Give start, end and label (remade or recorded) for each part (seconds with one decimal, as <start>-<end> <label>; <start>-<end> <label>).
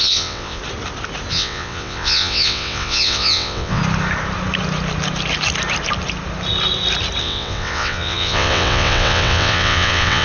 0.0-0.6 remade; 0.6-1.3 recorded; 1.3-3.8 remade; 3.8-7.2 recorded; 7.2-10.2 remade